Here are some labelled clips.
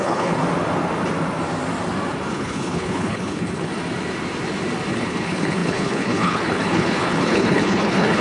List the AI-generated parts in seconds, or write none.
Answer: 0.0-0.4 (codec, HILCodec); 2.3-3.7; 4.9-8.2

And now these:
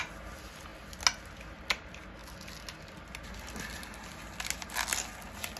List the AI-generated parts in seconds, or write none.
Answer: none

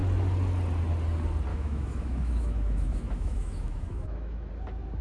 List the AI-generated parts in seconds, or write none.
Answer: 1.5-4.5 (autoencoder, DAC-VAE)

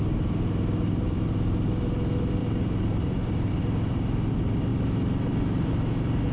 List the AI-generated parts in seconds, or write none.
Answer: 2.4-3.6 (vocoder, BigVGAN v2); 4.7-5.7

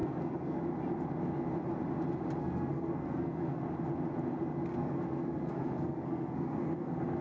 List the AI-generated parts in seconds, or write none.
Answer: 0.0-0.6 (codec, SNAC); 2.4-3.6; 4.7-7.2